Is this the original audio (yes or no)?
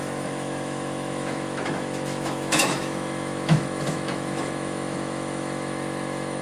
no